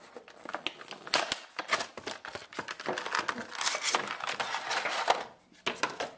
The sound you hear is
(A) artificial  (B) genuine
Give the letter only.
B